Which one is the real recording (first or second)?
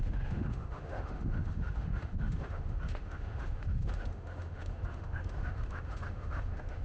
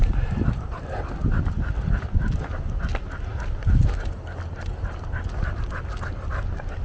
second